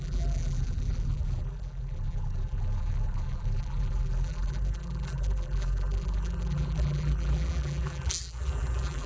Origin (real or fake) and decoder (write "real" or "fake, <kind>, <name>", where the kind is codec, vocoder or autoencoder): fake, vocoder, BigVGAN v2